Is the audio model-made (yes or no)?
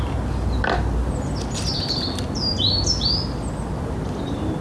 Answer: no